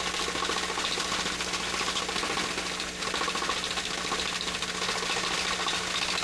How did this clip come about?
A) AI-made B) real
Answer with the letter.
B